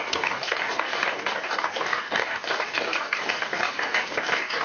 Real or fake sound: fake